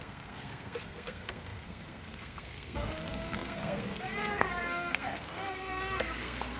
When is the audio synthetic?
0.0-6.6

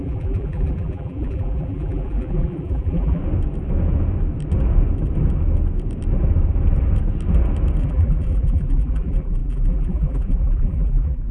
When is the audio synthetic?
0.0-3.2; 7.8-11.3

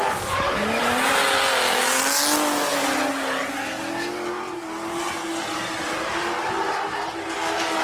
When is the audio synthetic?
0.0-0.8; 3.5-4.4; 7.3-7.8

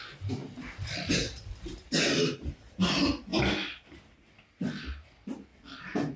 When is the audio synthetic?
0.4-1.9; 5.5-6.2